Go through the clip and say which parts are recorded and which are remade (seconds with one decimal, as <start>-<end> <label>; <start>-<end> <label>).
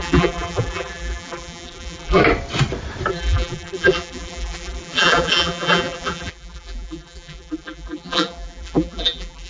0.0-2.2 remade; 2.2-3.1 recorded; 3.1-9.5 remade